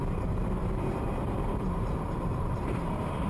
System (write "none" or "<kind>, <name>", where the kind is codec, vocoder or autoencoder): vocoder, BigVGAN v2